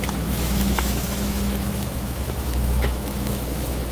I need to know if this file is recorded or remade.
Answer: remade